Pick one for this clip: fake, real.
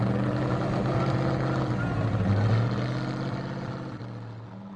real